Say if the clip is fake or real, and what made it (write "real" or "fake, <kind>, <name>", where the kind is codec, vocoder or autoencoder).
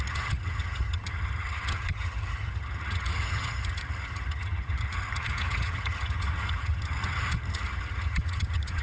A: fake, vocoder, HiFi-GAN